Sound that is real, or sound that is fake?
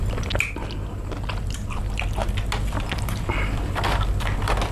real